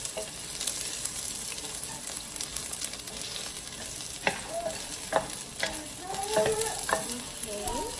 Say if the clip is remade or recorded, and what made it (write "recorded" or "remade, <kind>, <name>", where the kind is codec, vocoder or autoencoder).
recorded